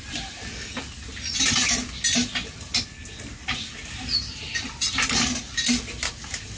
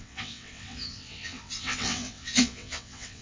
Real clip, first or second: first